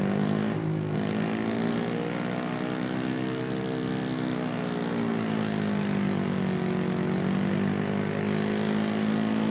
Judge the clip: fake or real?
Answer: real